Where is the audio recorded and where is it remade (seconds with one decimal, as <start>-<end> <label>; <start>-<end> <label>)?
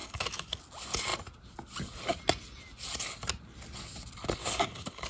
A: 0.0-0.6 remade; 0.6-4.4 recorded; 4.4-5.1 remade